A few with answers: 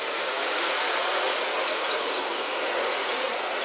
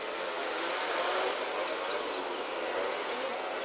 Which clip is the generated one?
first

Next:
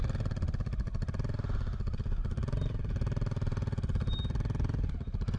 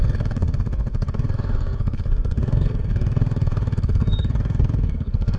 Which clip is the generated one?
second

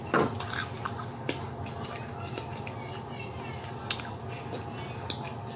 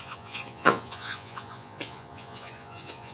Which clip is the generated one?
second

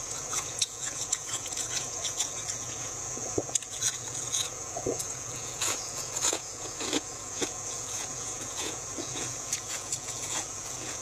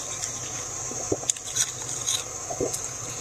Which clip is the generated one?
first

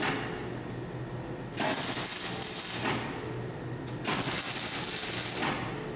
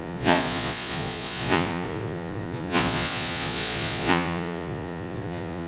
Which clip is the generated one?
second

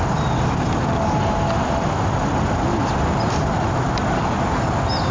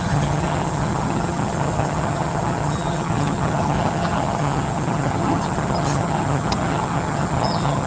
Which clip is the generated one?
second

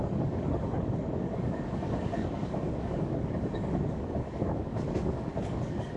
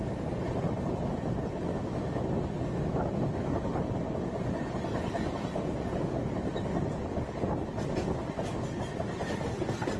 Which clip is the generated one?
first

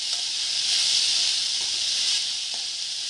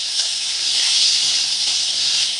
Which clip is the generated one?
second